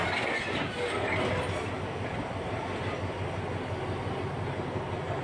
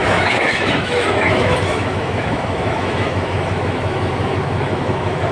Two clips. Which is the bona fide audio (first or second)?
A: first